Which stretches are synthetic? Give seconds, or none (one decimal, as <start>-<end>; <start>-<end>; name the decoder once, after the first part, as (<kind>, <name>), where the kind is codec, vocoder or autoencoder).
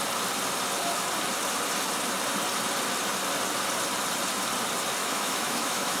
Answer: 5.0-6.0 (autoencoder, DAC-VAE)